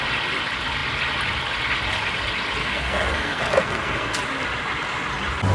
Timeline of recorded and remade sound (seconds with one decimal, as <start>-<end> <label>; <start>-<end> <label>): 0.0-2.6 recorded; 2.6-4.2 remade; 4.2-5.5 recorded